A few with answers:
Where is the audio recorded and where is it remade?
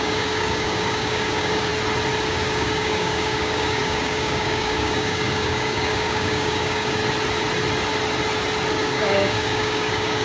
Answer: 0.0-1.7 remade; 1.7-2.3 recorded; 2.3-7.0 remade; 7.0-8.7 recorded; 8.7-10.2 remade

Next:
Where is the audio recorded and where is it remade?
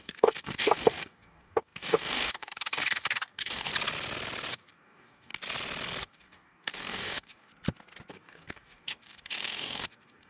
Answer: 0.0-3.7 remade; 3.7-4.5 recorded; 4.5-5.3 remade; 5.3-6.0 recorded; 6.0-7.5 remade; 7.5-8.1 recorded; 8.1-10.3 remade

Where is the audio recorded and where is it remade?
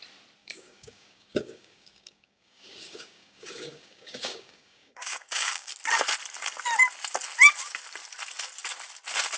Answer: 0.0-0.4 recorded; 0.4-5.7 remade; 5.7-9.4 recorded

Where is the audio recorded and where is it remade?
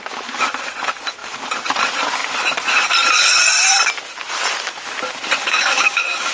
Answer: 0.0-5.4 recorded; 5.4-6.3 remade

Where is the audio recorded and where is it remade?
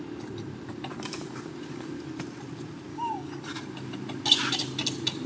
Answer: 0.0-2.9 recorded; 2.9-3.4 remade; 3.4-5.3 recorded